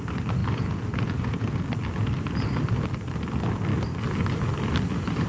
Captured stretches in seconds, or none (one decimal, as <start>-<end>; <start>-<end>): 0.0-0.4; 1.6-5.3